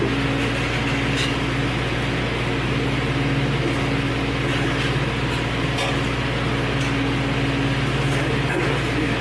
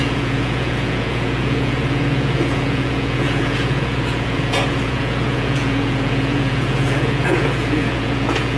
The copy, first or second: second